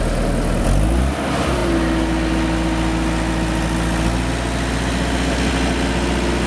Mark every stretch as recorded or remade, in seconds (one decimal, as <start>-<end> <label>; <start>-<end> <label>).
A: 0.0-6.5 recorded